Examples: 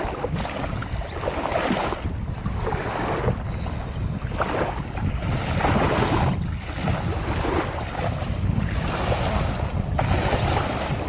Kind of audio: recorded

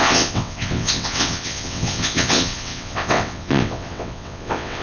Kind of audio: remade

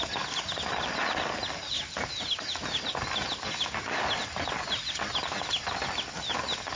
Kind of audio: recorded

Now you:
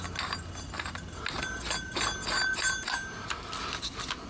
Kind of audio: recorded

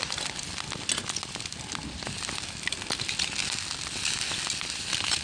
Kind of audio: recorded